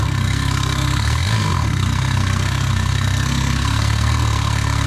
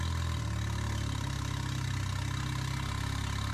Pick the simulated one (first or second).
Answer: first